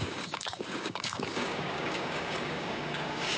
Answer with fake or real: fake